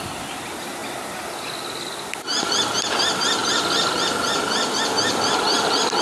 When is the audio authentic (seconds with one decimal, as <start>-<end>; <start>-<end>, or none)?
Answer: 0.0-6.0